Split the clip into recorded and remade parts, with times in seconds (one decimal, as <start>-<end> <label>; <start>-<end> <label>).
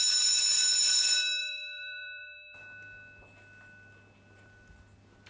0.0-1.4 recorded; 1.4-2.6 remade; 2.6-5.3 recorded